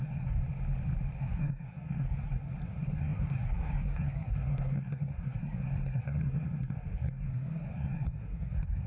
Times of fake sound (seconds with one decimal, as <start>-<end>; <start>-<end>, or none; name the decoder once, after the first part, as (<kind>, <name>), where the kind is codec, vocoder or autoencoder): 0.0-0.4 (codec, SNAC); 1.2-8.9